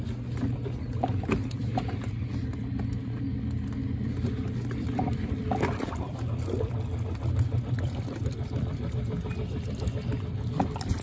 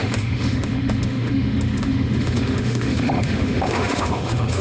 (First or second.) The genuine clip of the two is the first